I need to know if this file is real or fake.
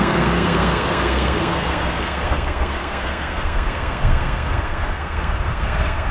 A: fake